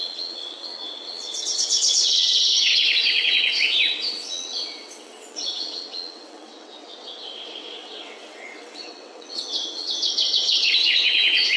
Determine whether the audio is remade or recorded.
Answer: remade